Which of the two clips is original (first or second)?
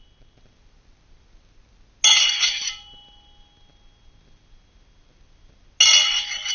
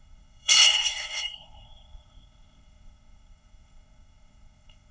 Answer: first